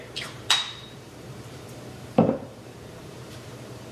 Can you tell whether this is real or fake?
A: fake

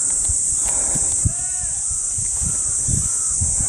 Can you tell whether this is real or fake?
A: fake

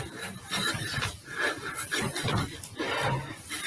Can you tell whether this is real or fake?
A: fake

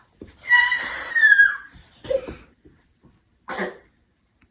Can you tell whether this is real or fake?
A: fake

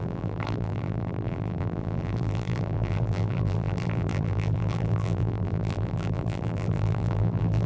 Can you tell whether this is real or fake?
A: fake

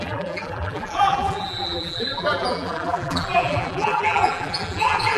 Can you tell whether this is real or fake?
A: fake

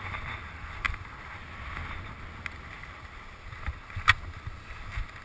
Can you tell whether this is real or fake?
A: real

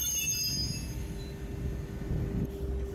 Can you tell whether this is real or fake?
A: real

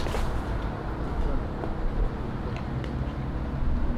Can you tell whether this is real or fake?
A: real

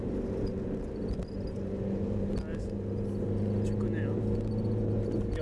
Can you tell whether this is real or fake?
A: real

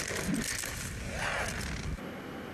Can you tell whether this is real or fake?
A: real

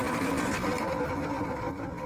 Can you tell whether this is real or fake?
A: fake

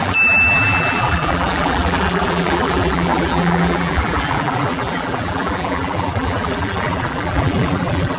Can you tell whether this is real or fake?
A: fake